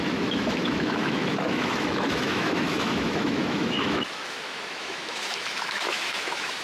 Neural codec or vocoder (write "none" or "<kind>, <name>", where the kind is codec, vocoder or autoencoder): autoencoder, DAC-VAE